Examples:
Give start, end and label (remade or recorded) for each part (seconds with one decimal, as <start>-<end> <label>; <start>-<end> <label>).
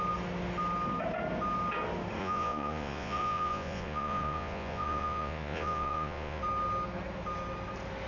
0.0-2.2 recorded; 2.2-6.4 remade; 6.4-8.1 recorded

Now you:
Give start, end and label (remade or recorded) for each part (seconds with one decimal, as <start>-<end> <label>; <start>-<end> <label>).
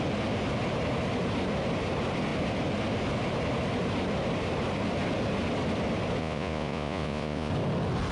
0.0-6.2 recorded; 6.2-7.5 remade; 7.5-8.1 recorded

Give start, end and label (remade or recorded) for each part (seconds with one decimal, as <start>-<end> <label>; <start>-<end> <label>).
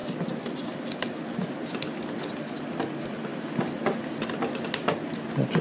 0.0-5.6 recorded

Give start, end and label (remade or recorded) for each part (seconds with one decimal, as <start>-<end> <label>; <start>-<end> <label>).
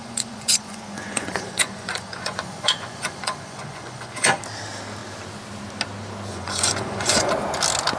0.0-4.4 remade; 4.4-6.3 recorded; 6.3-7.3 remade; 7.3-8.0 recorded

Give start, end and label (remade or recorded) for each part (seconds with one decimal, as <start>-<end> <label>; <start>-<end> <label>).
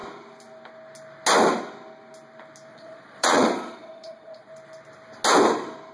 0.0-2.7 recorded; 2.7-4.5 remade; 4.5-5.9 recorded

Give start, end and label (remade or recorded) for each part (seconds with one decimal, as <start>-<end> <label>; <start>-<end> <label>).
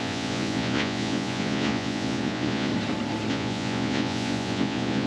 0.0-2.7 remade; 2.7-3.3 recorded; 3.3-5.1 remade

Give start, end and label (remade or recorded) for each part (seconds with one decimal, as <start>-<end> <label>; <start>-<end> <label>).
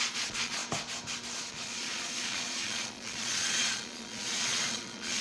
0.0-0.6 remade; 0.6-1.4 recorded; 1.4-5.2 remade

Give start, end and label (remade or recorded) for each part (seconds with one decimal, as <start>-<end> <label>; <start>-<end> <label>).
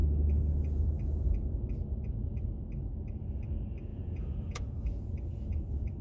0.0-3.9 recorded; 3.9-5.1 remade; 5.1-6.0 recorded